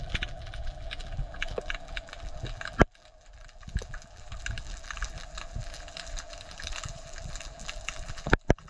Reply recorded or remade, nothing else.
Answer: remade